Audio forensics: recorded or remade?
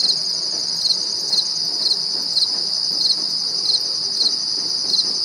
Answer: recorded